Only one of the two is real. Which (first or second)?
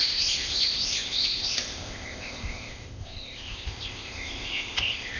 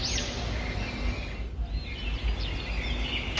second